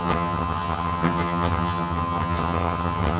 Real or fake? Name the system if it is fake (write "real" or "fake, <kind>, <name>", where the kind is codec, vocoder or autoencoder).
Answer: fake, vocoder, HiFi-GAN